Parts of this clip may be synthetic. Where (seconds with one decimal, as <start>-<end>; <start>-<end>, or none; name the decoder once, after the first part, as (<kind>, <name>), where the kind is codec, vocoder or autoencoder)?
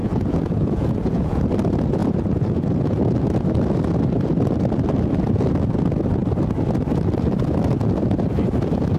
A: 0.0-1.4 (vocoder, Vocos); 2.0-3.0